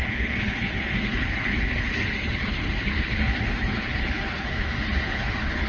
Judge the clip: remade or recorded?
remade